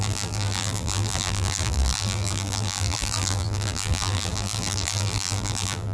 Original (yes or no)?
no